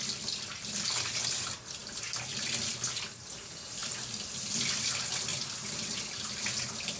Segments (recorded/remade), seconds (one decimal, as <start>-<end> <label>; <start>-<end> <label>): 0.0-3.8 recorded; 3.8-4.6 remade; 4.6-5.3 recorded; 5.3-6.0 remade; 6.0-7.0 recorded